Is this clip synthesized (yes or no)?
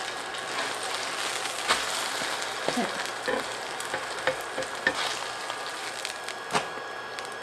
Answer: no